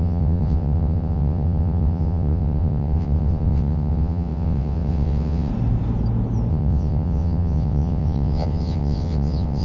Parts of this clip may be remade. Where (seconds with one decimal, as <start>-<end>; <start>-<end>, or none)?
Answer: 0.0-5.5; 6.5-9.6